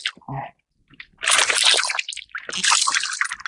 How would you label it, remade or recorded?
recorded